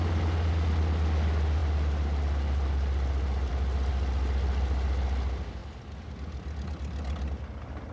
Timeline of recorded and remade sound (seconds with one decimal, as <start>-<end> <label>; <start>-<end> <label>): 0.0-7.9 recorded